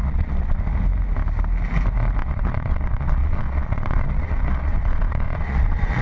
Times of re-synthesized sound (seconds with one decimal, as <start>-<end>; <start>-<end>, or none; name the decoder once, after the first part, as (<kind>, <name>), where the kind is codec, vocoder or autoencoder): 0.0-0.6 (vocoder, Vocos); 2.2-6.0